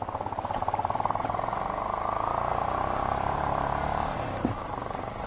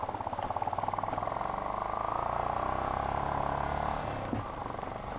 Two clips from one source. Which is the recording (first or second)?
second